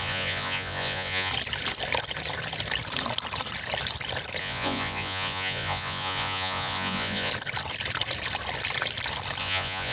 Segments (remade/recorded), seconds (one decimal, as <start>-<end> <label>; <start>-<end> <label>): 0.0-1.3 remade; 1.3-4.4 recorded; 4.4-7.3 remade; 7.3-9.4 recorded; 9.4-9.9 remade